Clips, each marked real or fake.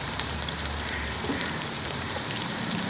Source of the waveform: fake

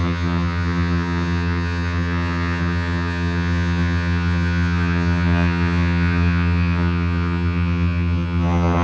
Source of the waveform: fake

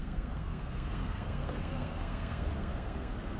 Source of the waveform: fake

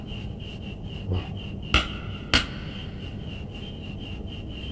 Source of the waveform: real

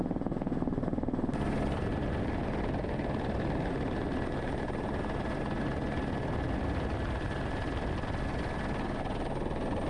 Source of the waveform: real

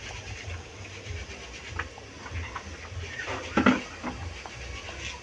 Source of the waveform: real